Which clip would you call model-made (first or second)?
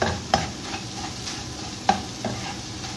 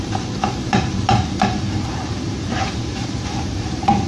second